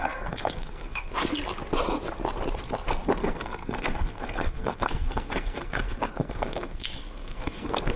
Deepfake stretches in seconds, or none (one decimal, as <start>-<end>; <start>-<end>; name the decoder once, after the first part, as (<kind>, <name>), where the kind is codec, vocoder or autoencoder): 0.0-1.1 (codec, SNAC); 3.2-8.0